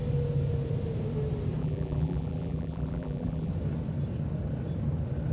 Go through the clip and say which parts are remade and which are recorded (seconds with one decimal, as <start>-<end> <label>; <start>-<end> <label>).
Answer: 0.0-1.6 recorded; 1.6-3.5 remade; 3.5-5.3 recorded